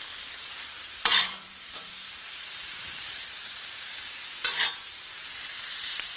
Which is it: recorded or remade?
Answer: remade